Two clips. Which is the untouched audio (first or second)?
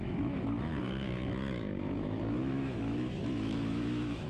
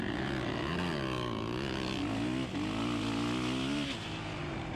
second